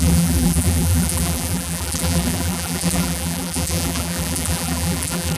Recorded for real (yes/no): no